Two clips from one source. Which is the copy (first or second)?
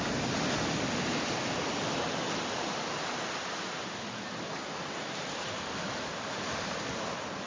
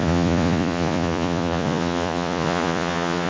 second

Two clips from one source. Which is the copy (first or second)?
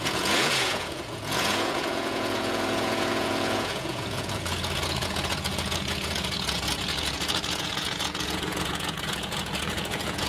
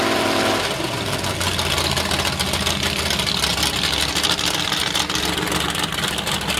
first